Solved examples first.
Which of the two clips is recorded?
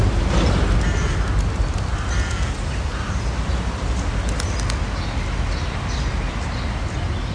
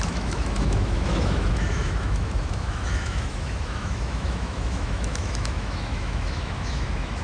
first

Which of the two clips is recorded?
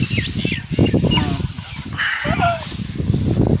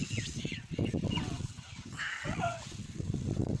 first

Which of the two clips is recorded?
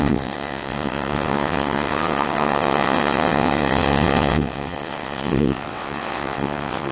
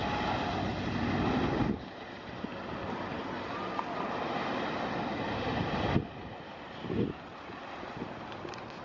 second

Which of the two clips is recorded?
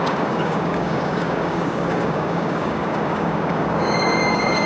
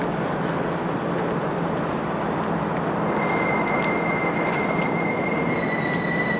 second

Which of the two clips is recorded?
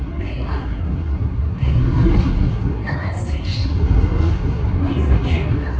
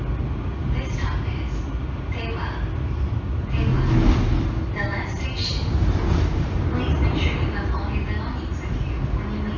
second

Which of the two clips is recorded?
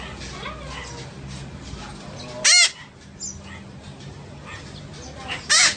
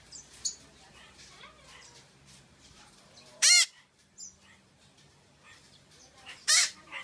first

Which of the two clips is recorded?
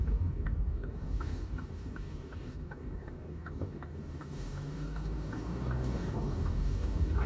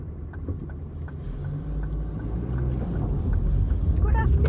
second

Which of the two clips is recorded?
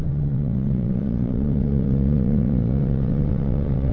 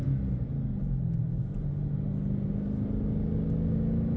second